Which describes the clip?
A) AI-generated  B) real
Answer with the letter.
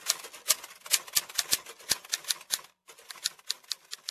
B